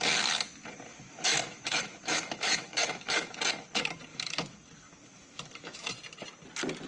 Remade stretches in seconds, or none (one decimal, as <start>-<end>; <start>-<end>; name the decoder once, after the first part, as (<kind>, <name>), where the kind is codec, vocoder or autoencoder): 0.9-3.4 (autoencoder, DAC-VAE); 4.1-5.9